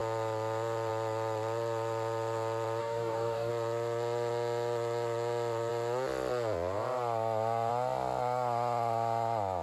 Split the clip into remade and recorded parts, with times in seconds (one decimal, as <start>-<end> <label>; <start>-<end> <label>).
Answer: 0.0-2.8 recorded; 2.8-3.5 remade; 3.5-9.6 recorded